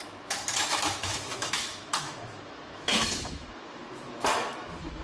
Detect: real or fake fake